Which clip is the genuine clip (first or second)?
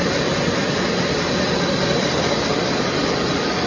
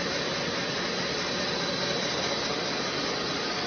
second